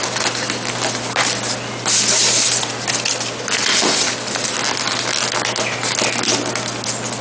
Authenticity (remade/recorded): recorded